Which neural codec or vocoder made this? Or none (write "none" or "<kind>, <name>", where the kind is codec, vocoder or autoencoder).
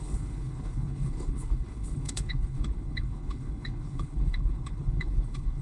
codec, HILCodec